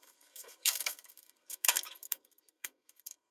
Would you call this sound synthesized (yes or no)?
yes